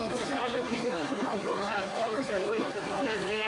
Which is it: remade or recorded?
remade